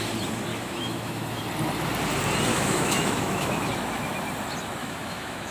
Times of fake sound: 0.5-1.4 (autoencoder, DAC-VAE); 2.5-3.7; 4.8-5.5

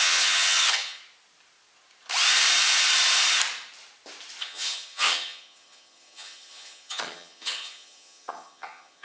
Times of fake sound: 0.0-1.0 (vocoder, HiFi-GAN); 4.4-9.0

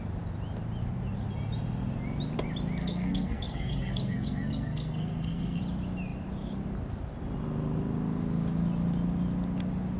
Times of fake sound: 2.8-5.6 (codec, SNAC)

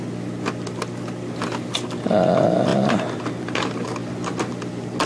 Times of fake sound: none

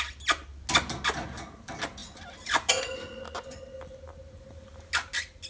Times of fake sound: none

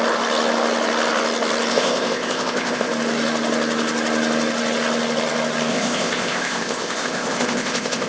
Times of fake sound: 1.7-2.9 (codec, ZipCodec); 5.7-8.1

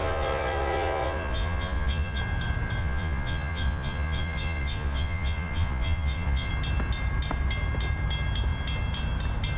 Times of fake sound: 0.0-2.2 (vocoder, Vocos); 2.8-6.5